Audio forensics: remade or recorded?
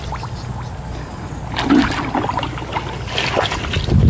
recorded